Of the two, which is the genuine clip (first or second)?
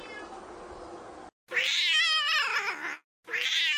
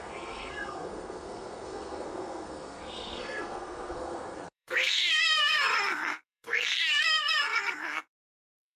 first